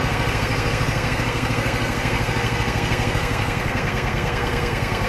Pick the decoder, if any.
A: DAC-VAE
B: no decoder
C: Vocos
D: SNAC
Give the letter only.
D